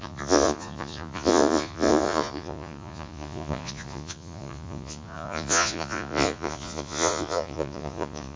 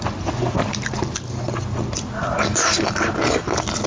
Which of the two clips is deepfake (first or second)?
first